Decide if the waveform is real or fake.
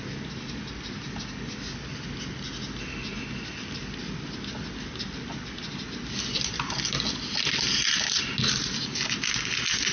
real